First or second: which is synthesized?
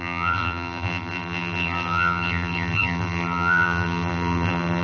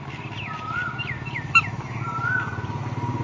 first